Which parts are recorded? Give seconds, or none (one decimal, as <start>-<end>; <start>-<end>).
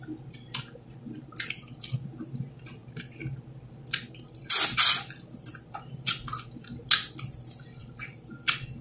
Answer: 0.0-2.8; 5.9-7.8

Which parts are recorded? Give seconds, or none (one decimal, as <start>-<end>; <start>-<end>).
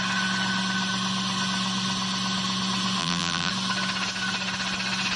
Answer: 0.0-3.0; 3.5-5.2